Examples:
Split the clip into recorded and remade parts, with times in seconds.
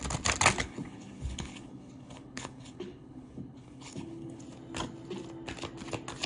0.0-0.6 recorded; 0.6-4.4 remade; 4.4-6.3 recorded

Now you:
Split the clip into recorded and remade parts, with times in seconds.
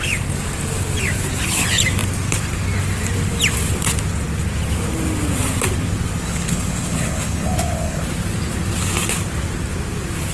0.0-6.3 recorded; 6.3-8.0 remade; 8.0-10.3 recorded